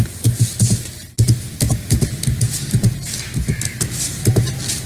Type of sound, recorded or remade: recorded